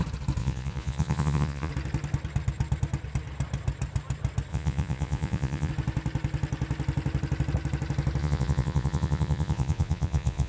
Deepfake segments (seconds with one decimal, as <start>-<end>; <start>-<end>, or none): 0.4-1.7; 4.5-5.7; 8.2-10.5